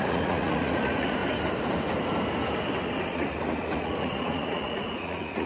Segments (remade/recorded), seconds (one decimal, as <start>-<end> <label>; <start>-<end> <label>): 0.0-1.2 remade; 1.2-3.0 recorded; 3.0-5.5 remade